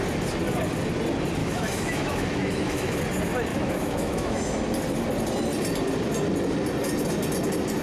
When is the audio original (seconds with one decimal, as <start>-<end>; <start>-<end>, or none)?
0.0-1.4; 3.0-3.5; 4.6-7.8